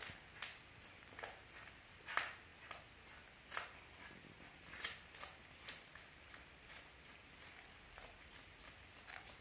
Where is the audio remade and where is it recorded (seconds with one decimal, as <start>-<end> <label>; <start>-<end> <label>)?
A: 0.0-9.4 recorded